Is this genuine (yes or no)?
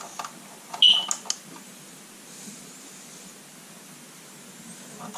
yes